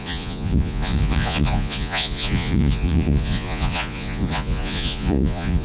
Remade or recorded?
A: remade